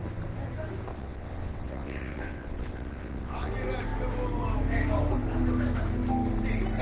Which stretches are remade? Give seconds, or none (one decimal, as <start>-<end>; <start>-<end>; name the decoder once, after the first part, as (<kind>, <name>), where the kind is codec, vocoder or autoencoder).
0.9-3.5 (vocoder, WaveNeXt)